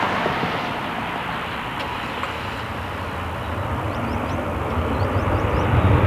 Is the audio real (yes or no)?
no